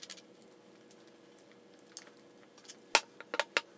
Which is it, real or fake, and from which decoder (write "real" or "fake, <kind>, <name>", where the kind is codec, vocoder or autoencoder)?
real